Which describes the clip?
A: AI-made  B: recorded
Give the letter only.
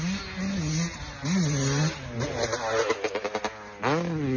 B